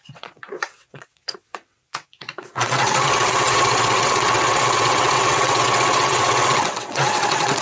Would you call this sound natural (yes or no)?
no